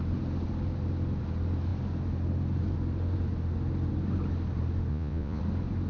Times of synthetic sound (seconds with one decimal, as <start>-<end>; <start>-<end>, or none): 4.9-5.4